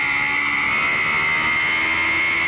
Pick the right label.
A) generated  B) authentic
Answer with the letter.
B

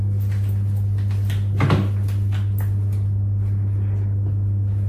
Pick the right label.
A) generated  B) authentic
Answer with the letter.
B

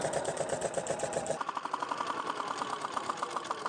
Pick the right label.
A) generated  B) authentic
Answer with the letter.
A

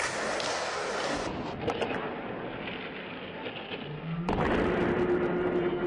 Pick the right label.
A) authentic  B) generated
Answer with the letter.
A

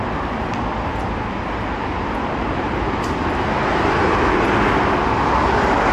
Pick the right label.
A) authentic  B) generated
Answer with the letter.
A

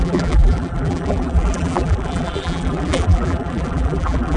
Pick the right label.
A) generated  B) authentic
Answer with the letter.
A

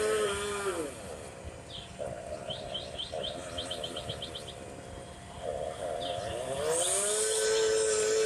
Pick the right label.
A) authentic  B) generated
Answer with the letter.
A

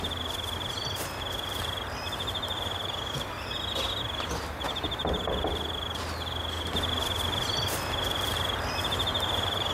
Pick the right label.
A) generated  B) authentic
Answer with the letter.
B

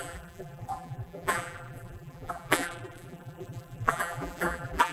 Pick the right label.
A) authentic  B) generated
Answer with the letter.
B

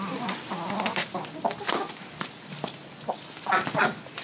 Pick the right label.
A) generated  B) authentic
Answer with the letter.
B